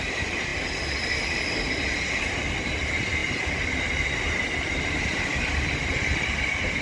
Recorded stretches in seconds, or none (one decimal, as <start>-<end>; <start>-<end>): 0.0-6.8